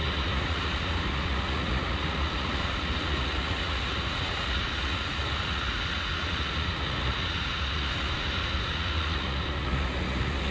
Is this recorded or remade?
remade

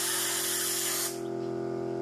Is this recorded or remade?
recorded